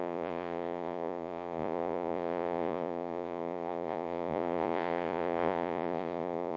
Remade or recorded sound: remade